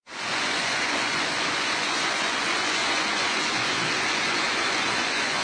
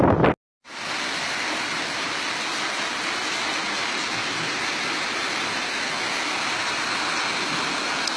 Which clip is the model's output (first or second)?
first